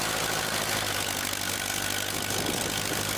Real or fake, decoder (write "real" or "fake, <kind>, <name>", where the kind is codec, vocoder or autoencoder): real